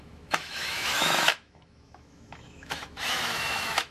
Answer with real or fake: fake